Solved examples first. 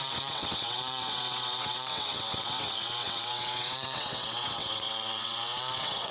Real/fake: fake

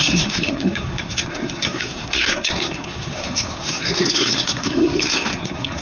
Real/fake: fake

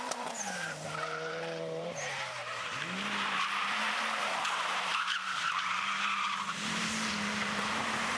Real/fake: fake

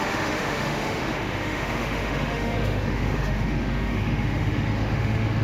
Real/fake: fake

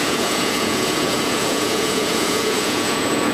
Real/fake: fake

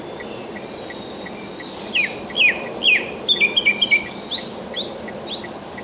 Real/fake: real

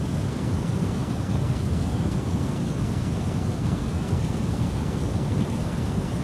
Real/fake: fake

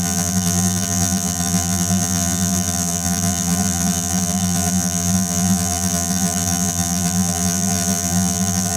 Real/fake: fake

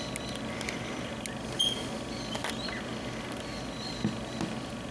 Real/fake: real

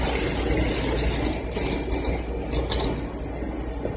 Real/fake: fake